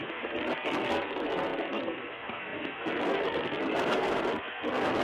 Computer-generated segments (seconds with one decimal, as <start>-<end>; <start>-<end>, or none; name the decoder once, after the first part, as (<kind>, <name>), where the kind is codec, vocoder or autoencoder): 0.0-5.0 (codec, SNAC)